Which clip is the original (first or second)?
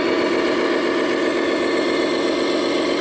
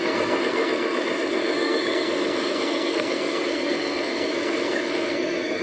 first